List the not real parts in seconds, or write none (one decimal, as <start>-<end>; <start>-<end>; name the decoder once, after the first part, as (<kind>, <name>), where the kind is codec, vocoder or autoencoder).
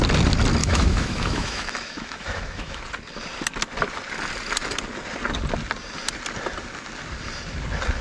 0.6-2.8 (autoencoder, DAC-VAE)